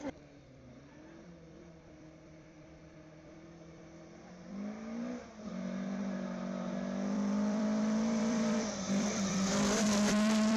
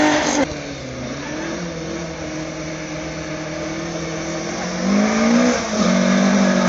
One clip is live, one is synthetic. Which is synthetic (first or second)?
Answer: first